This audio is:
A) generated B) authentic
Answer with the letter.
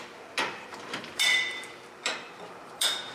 A